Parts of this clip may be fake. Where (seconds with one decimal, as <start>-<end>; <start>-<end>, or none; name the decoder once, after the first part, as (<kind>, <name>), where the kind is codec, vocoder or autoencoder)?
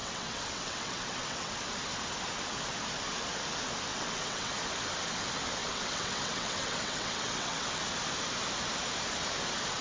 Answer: 0.0-1.5 (vocoder, WaveNeXt); 3.9-4.5; 5.6-7.8